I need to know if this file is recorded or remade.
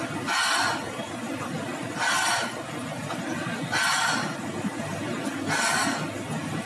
recorded